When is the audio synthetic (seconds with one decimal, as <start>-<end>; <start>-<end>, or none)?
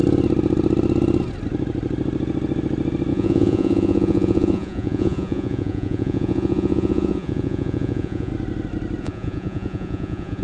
3.1-8.3; 9.0-10.4